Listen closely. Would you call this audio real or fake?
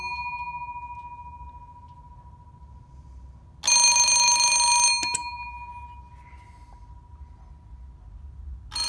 real